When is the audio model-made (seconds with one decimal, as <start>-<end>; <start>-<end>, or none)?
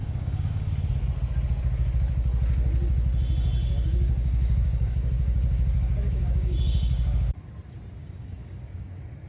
0.0-0.7; 3.6-7.4; 8.0-8.9